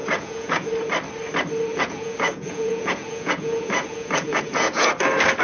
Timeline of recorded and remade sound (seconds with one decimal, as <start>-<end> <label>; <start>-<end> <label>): 0.0-0.7 remade; 0.7-1.7 recorded; 1.7-4.9 remade; 4.9-5.4 recorded